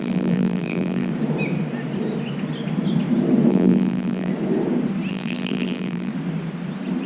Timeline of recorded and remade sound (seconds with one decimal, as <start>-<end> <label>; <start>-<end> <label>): 0.0-1.1 remade; 1.1-3.5 recorded; 3.5-4.3 remade; 4.3-5.1 recorded; 5.1-6.1 remade; 6.1-7.1 recorded